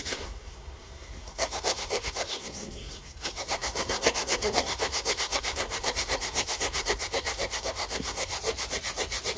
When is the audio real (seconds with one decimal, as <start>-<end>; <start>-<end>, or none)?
8.3-9.4